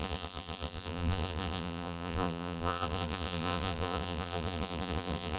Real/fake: fake